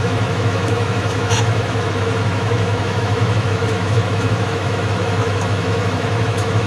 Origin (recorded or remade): remade